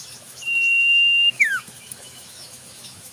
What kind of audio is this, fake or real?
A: fake